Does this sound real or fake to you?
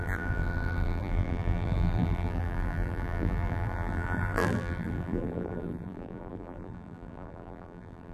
fake